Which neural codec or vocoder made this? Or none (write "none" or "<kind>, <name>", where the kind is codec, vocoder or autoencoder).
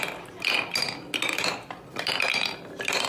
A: none